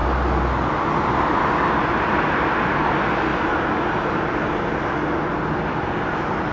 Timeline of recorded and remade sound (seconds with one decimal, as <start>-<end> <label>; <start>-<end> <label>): 0.0-6.5 recorded